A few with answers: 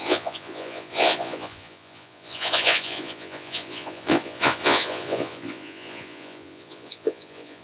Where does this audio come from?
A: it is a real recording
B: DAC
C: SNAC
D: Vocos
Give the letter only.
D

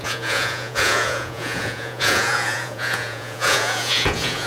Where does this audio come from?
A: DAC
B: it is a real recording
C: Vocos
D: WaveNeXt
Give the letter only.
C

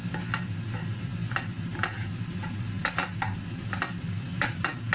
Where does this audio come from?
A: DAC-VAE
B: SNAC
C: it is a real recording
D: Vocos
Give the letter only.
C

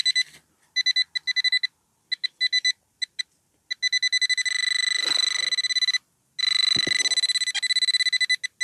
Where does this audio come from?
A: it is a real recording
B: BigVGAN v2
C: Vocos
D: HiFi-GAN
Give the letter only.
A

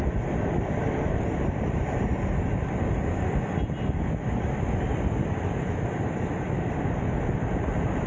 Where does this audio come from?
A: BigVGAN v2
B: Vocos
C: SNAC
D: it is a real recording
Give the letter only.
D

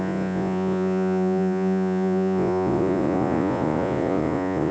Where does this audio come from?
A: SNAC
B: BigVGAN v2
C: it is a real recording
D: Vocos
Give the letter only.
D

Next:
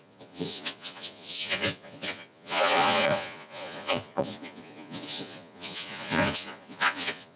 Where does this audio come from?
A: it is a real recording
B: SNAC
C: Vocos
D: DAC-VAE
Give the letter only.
C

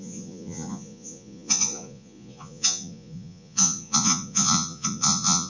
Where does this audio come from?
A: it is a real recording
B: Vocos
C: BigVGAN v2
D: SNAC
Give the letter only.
B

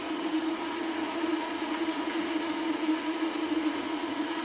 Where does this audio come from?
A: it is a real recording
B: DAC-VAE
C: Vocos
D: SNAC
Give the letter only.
C